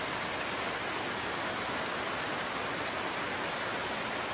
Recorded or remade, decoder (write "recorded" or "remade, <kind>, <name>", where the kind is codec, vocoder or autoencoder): recorded